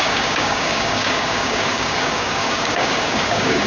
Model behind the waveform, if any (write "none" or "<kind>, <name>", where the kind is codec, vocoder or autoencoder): codec, DAC